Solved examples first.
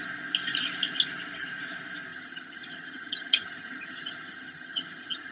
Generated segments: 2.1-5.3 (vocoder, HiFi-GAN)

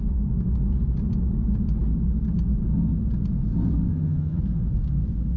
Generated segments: 3.9-4.4 (vocoder, HiFi-GAN)